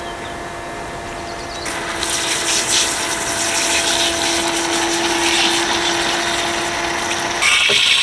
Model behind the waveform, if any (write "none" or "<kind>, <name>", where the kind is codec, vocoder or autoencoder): none